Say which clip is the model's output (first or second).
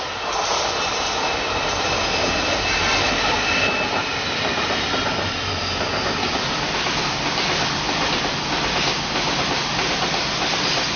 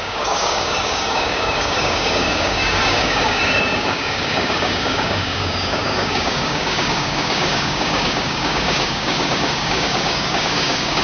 second